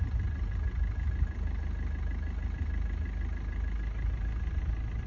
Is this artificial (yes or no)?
no